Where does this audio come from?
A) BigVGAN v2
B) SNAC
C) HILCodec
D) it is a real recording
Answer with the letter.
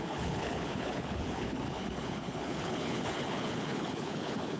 C